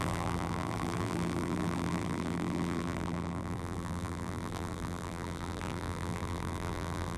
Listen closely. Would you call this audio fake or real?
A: fake